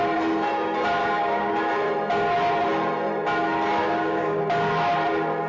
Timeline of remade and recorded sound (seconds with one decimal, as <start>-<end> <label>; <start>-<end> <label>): 0.0-1.0 recorded; 1.0-1.5 remade; 1.5-3.8 recorded; 3.8-4.4 remade; 4.4-5.5 recorded